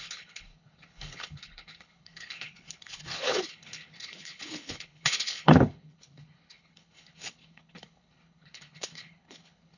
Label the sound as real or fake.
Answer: fake